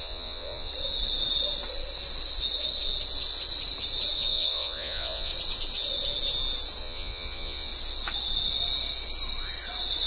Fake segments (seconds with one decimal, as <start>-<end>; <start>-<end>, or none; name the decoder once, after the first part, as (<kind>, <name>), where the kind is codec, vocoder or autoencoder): 0.0-0.7 (vocoder, Vocos); 4.3-5.3; 6.8-7.7